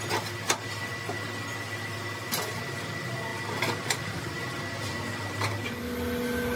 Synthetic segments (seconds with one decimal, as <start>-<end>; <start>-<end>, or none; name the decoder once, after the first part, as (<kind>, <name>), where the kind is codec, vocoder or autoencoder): none